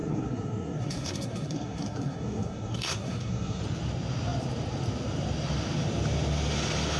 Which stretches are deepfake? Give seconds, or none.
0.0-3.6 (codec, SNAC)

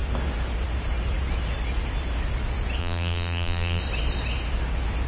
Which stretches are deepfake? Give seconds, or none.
2.8-3.8 (vocoder, BigVGAN v2)

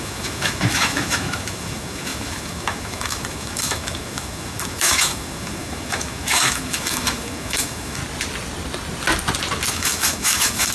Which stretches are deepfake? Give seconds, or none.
0.0-8.0 (autoencoder, DAC-VAE); 9.7-10.7

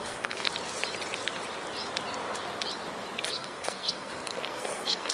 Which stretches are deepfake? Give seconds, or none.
0.0-0.5 (codec, SNAC); 3.3-5.1

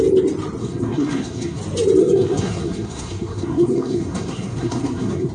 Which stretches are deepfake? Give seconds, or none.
0.6-1.6 (codec, SNAC); 2.0-5.3